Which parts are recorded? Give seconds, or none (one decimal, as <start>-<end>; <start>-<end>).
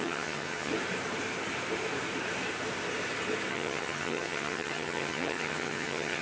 0.7-3.5